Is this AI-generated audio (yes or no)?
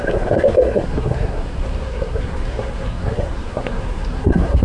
yes